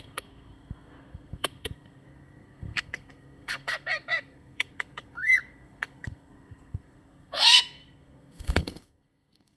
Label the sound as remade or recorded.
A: remade